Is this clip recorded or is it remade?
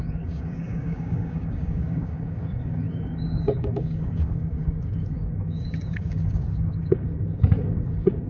remade